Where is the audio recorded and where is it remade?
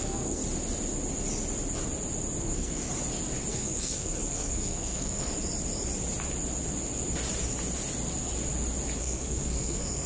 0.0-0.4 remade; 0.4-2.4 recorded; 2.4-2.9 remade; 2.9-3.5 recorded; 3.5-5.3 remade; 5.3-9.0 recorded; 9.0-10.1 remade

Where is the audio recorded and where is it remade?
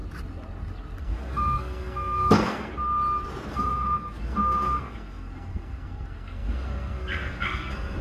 0.0-1.0 recorded; 1.0-2.7 remade; 2.7-3.5 recorded; 3.5-8.0 remade